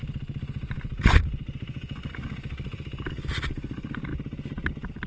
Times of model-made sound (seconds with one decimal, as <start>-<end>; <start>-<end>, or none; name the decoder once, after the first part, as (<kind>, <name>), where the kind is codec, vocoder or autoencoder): 0.0-3.1 (vocoder, BigVGAN v2); 4.1-5.1